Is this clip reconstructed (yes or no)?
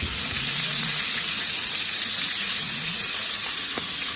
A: yes